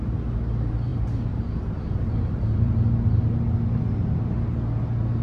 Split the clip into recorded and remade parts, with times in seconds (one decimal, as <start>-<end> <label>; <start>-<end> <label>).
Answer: 0.0-0.9 recorded; 0.9-2.8 remade; 2.8-5.2 recorded